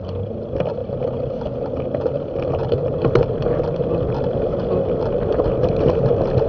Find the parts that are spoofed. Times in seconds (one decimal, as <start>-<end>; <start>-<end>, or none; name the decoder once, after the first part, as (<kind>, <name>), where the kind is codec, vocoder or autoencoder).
none